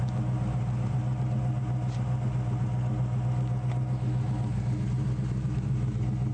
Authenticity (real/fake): real